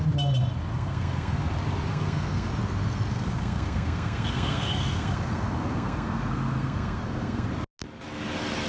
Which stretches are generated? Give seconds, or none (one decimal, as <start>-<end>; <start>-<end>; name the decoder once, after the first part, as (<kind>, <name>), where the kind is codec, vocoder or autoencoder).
0.7-1.4 (codec, SNAC); 1.9-2.5; 3.1-7.5